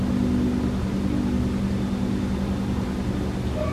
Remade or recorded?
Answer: recorded